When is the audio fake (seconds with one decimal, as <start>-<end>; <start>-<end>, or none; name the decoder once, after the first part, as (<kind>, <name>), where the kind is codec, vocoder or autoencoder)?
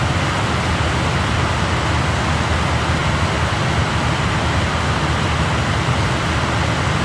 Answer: none